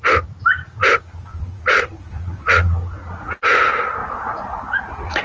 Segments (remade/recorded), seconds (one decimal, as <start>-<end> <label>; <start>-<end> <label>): 0.0-1.3 recorded; 1.3-3.4 remade; 3.4-4.0 recorded; 4.0-5.2 remade

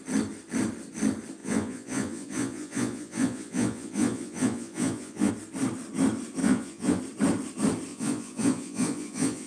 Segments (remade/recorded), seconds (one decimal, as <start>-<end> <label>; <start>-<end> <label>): 0.0-1.4 recorded; 1.4-5.3 remade; 5.3-6.4 recorded; 6.4-7.0 remade; 7.0-7.9 recorded; 7.9-9.5 remade

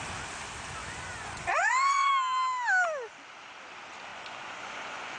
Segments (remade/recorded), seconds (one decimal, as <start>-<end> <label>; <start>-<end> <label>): 0.0-0.8 recorded; 0.8-2.1 remade; 2.1-4.1 recorded; 4.1-5.2 remade

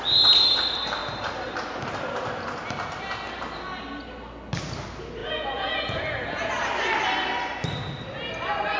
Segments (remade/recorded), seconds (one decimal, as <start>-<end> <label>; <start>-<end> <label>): 0.0-5.2 recorded; 5.2-6.5 remade; 6.5-8.8 recorded

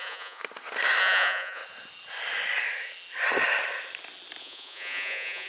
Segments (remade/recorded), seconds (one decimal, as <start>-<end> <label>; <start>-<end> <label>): 0.0-0.4 remade; 0.4-1.0 recorded; 1.0-1.6 remade; 1.6-4.4 recorded; 4.4-5.5 remade

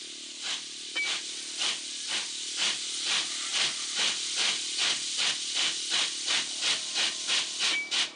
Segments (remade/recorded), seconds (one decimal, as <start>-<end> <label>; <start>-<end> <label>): 0.0-8.2 recorded